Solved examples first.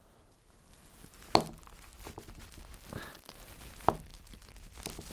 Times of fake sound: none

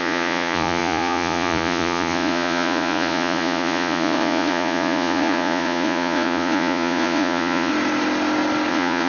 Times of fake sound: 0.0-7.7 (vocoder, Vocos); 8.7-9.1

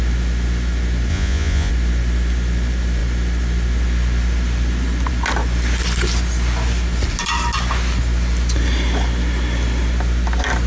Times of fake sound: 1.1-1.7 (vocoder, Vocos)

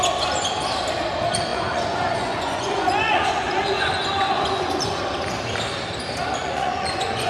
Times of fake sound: 1.5-5.0 (vocoder, Vocos); 6.4-7.3

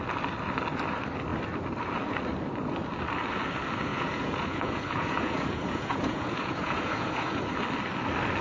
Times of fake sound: 3.9-7.4 (vocoder, Vocos)

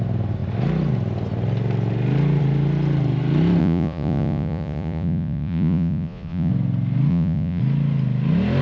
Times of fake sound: 3.6-6.5 (vocoder, Vocos); 7.1-7.6

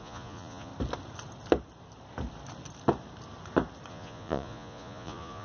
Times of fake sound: 0.0-0.7 (vocoder, Vocos); 3.9-5.4

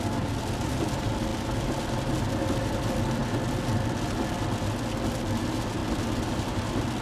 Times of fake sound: none